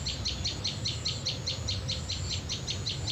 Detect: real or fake real